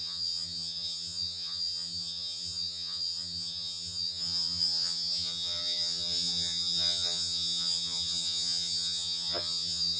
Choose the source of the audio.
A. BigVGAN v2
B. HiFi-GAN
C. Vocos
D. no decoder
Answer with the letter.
B